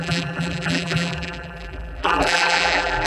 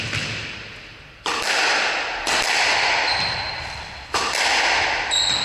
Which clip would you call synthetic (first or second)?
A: first